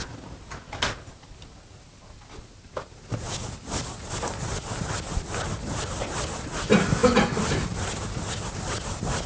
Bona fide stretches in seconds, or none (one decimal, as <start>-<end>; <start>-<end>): 0.0-9.3